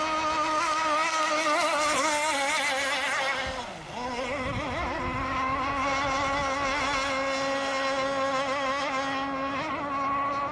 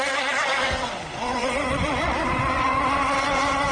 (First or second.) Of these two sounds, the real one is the first